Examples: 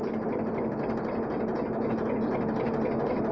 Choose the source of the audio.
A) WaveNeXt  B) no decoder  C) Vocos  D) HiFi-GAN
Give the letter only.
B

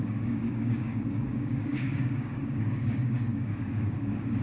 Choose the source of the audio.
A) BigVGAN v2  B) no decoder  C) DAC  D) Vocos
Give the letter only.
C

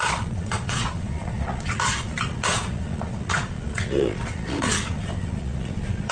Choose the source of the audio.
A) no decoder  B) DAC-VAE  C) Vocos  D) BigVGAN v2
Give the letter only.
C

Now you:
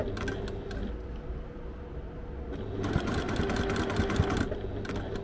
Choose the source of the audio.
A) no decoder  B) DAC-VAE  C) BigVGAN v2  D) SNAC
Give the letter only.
A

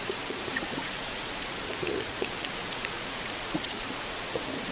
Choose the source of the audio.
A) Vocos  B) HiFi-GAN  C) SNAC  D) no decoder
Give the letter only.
A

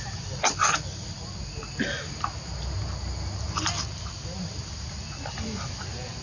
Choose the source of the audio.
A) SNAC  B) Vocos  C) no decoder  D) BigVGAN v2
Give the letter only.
C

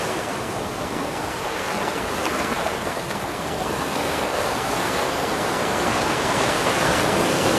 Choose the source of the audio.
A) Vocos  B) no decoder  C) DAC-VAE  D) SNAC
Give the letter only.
D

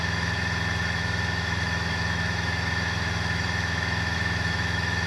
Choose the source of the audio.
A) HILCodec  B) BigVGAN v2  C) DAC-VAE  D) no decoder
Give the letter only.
C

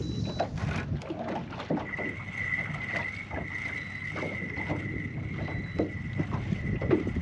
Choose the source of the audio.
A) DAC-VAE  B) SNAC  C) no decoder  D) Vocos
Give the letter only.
C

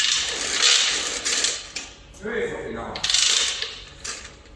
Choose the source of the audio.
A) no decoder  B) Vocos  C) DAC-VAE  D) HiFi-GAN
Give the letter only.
A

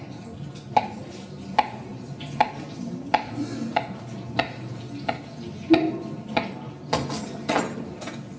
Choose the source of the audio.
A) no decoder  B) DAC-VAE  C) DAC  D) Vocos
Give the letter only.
A